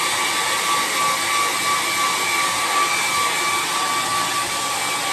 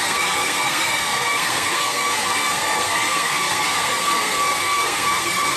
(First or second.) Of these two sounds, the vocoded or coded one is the second